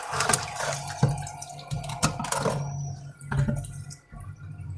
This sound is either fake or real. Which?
real